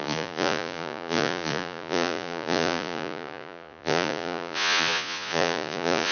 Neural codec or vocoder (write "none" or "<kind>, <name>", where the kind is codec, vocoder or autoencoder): vocoder, Vocos